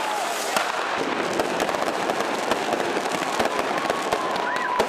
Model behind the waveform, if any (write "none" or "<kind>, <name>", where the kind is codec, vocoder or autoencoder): none